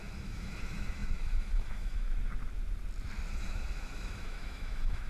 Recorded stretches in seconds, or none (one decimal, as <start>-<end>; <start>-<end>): 2.1-3.3